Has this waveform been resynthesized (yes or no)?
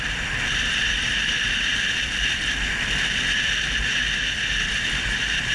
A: yes